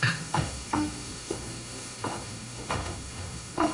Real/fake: fake